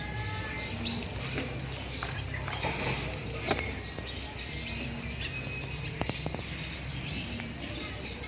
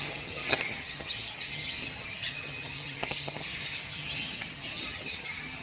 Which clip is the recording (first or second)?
first